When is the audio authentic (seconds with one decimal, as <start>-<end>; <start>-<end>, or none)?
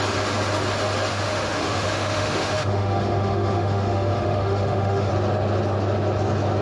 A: 0.0-1.1; 5.1-6.6